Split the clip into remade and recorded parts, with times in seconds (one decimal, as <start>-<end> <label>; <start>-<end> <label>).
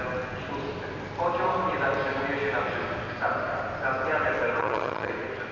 0.0-4.6 recorded; 4.6-5.1 remade; 5.1-5.5 recorded